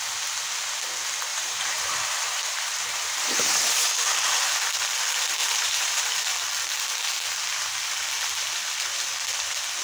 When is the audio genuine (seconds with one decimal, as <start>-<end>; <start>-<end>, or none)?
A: 0.0-1.3; 3.9-5.4; 6.3-9.8